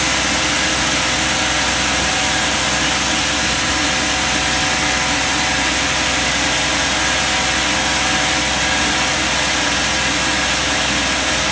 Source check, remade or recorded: recorded